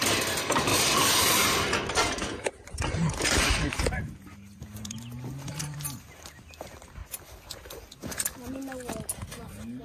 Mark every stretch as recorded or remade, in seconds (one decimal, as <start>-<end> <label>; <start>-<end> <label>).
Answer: 0.0-7.0 remade; 7.0-9.8 recorded